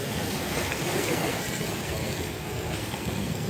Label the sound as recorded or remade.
remade